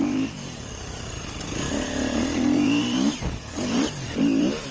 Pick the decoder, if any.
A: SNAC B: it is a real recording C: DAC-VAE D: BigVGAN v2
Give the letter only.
D